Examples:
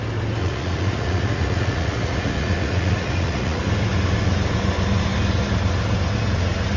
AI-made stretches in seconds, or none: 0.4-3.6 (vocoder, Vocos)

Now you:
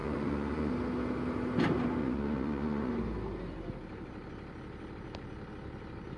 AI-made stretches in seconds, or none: 0.0-0.7 (vocoder, Vocos); 2.0-2.9

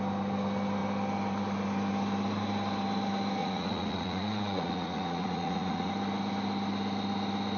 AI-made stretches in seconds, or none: 3.4-5.9 (vocoder, Vocos)

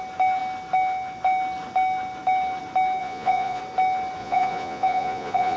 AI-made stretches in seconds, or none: 3.0-3.6 (vocoder, Vocos); 4.2-5.6

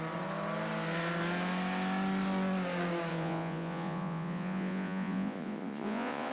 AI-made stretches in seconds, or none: 3.1-6.3 (vocoder, Vocos)

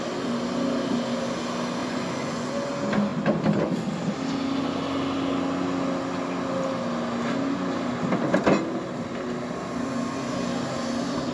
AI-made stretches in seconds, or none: 1.8-2.7 (vocoder, Vocos)

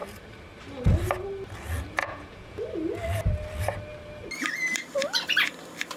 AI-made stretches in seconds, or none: 2.0-2.6 (vocoder, Vocos)